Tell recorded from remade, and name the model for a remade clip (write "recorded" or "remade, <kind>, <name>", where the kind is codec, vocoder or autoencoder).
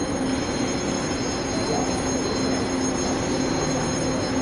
recorded